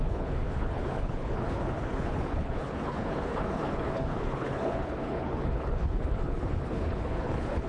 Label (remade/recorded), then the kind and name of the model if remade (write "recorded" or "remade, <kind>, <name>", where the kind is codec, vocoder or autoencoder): remade, codec, HILCodec